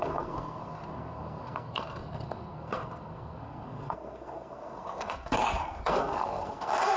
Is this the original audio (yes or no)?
no